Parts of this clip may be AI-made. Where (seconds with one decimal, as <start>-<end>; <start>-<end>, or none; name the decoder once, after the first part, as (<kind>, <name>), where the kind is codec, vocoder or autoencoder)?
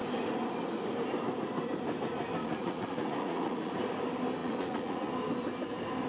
2.4-3.7 (vocoder, Vocos); 4.4-5.1